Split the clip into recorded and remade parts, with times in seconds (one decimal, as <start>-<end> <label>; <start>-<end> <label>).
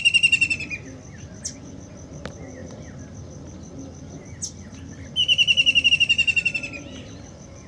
0.0-7.7 recorded